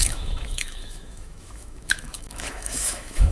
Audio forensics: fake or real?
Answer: fake